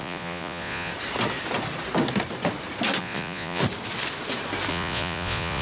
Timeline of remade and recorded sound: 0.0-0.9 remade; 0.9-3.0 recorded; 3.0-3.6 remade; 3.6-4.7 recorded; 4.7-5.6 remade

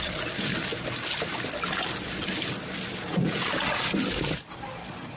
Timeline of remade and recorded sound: 0.0-5.2 recorded

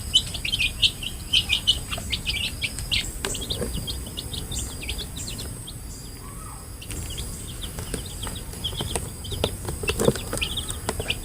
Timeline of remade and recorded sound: 0.0-0.8 recorded; 0.8-2.1 remade; 2.1-8.2 recorded; 8.2-8.9 remade; 8.9-11.2 recorded

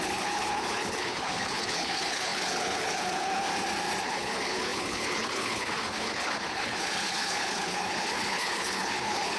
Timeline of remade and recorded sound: 0.0-3.5 remade; 3.5-4.0 recorded; 4.0-9.4 remade

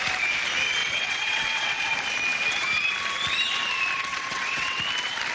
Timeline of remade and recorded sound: 0.0-0.8 recorded; 0.8-1.8 remade; 1.8-4.1 recorded; 4.1-4.8 remade; 4.8-5.3 recorded